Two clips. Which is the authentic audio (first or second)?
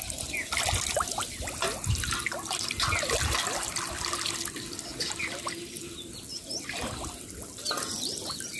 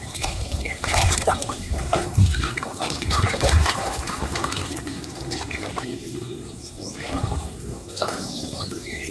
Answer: first